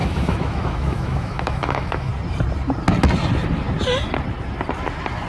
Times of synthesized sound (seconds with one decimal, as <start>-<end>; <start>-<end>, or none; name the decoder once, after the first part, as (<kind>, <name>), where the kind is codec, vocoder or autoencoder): 0.0-2.1 (autoencoder, DAC-VAE)